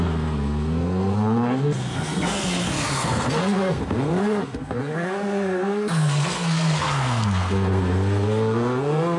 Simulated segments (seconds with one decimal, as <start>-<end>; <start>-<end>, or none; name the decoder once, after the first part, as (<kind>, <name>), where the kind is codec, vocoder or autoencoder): 0.0-9.2 (codec, SNAC)